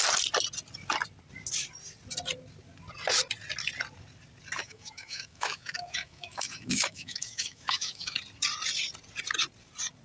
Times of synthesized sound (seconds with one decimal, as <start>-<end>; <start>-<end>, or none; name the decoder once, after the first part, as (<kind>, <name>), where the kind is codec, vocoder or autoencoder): 4.6-8.2 (autoencoder, DAC-VAE)